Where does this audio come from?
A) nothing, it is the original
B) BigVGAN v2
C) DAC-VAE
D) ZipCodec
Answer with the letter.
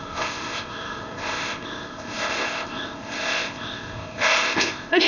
D